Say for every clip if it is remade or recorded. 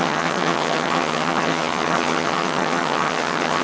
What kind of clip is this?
remade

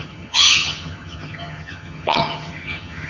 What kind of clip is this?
remade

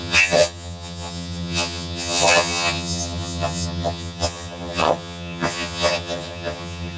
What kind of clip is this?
remade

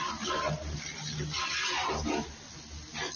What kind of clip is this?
recorded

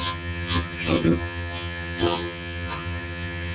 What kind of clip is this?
remade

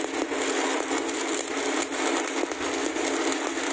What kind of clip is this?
recorded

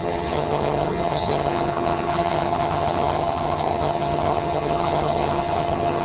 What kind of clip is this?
remade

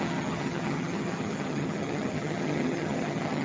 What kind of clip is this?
remade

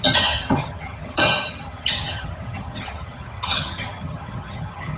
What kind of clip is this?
remade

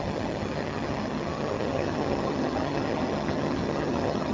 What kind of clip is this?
remade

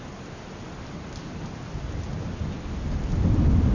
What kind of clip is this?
recorded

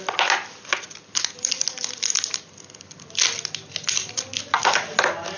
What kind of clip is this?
recorded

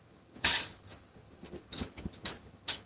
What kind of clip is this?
remade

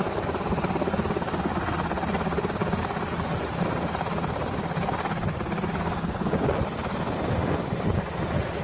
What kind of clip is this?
recorded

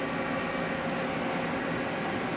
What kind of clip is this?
recorded